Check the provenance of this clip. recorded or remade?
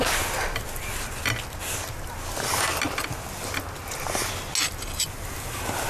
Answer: recorded